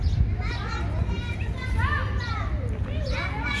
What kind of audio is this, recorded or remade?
recorded